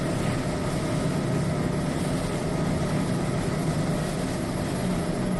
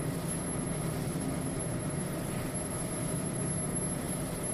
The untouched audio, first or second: first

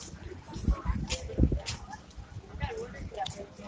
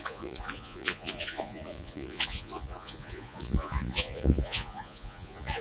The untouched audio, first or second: first